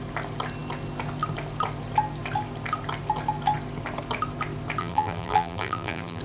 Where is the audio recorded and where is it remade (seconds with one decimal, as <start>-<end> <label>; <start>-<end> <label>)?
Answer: 0.0-4.8 recorded; 4.8-6.2 remade